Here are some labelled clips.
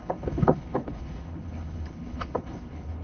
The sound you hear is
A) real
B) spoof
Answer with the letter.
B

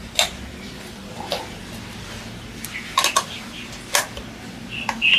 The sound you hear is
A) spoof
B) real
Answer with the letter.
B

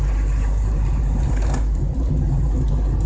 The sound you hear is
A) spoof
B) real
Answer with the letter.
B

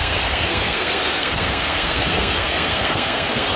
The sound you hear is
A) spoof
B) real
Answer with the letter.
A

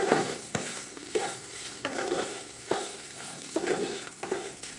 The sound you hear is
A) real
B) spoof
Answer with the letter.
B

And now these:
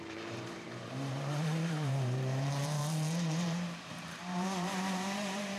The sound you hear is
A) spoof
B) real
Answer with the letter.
A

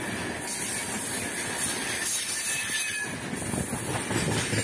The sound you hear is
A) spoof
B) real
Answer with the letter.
B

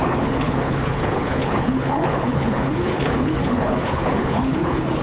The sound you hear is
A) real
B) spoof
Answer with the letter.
B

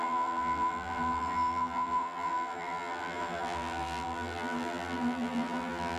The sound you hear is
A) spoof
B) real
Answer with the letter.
A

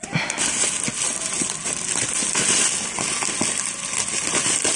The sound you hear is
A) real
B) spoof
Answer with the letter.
A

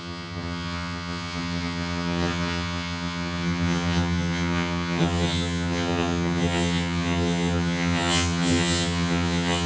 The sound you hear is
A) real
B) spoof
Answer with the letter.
B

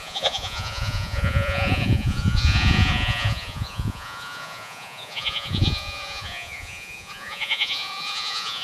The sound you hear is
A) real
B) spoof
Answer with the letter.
B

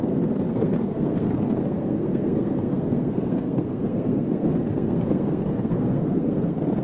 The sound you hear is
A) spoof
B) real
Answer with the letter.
A